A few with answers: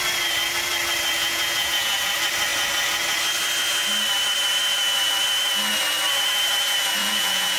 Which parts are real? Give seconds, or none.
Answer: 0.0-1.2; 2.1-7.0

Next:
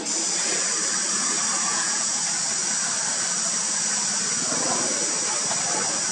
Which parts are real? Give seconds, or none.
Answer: 0.0-1.7; 2.2-6.1

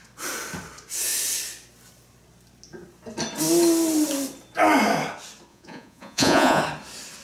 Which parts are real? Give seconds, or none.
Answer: 0.0-5.5; 6.6-7.2

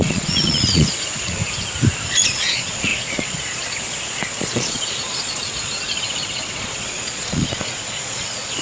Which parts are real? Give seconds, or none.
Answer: 1.4-2.1

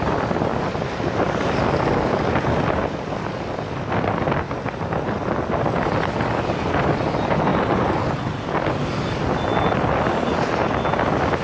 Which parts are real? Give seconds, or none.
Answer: 0.0-11.4

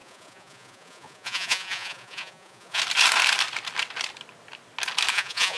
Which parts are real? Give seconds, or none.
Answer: 2.8-5.1

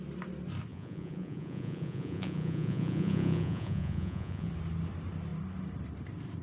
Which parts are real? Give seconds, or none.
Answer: 0.0-0.7; 4.5-6.4